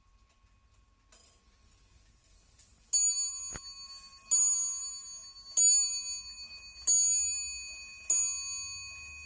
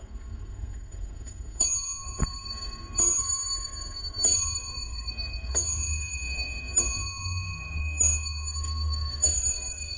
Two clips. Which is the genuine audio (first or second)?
first